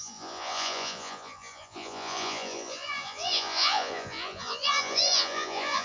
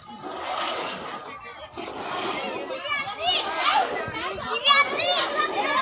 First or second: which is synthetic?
first